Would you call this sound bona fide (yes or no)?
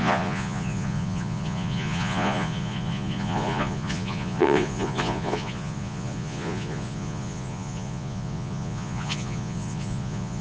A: no